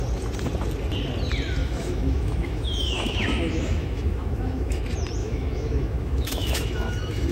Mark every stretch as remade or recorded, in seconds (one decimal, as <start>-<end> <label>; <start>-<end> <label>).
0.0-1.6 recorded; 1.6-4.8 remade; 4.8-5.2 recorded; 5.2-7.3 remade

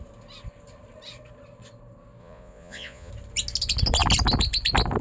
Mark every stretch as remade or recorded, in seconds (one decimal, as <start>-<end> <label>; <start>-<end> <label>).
0.0-2.2 recorded; 2.2-3.1 remade; 3.1-5.0 recorded

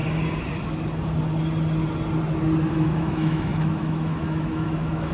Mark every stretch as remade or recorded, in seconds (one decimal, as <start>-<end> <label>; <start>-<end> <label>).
0.0-2.7 recorded; 2.7-5.1 remade

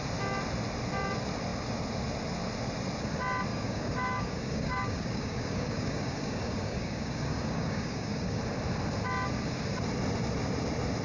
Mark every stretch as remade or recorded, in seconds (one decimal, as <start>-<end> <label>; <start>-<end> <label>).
0.0-3.5 recorded; 3.5-8.4 remade; 8.4-11.0 recorded